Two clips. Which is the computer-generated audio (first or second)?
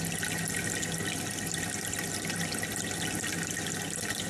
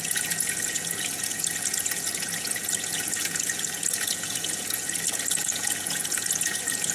second